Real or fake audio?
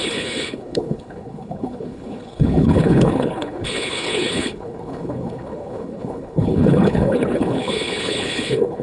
fake